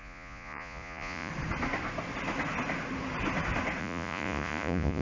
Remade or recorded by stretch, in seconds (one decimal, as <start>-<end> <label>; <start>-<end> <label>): 0.0-1.3 remade; 1.3-3.8 recorded; 3.8-5.0 remade